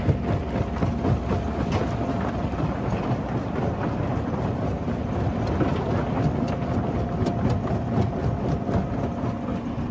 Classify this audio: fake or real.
real